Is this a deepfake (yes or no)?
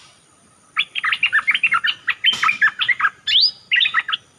no